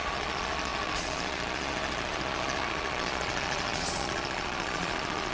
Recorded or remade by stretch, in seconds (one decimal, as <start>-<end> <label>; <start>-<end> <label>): 0.0-5.3 remade